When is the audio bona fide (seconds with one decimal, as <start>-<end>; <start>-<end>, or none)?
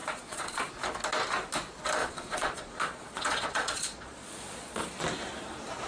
0.7-2.0; 5.0-5.9